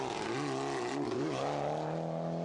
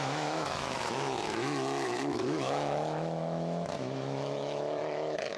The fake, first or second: second